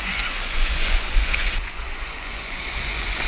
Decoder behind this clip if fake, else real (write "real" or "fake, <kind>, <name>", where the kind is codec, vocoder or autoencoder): fake, vocoder, Vocos